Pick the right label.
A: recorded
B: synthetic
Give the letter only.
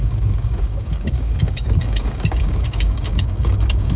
B